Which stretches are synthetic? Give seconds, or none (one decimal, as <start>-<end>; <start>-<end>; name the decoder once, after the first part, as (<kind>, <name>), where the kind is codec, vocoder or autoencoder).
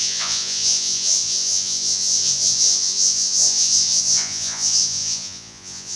0.0-6.0 (vocoder, Vocos)